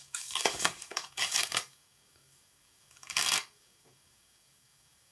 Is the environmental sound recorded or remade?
remade